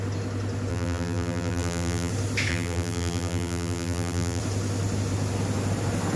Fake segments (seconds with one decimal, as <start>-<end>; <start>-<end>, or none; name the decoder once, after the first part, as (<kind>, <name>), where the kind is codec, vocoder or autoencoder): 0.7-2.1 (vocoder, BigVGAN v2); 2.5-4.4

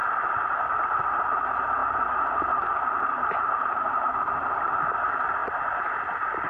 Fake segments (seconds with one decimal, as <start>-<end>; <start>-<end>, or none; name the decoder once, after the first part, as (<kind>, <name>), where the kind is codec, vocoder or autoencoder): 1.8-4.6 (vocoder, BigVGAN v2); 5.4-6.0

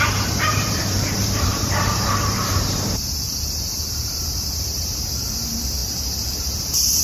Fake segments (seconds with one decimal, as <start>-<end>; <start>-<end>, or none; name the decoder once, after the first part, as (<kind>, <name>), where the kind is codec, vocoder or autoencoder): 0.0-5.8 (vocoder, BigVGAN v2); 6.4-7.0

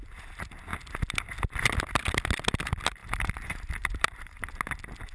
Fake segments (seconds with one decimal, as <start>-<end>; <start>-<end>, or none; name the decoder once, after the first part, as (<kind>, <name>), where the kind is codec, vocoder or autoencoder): 3.0-4.5 (vocoder, BigVGAN v2)